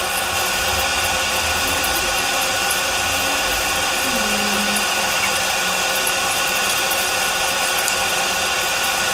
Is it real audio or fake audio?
real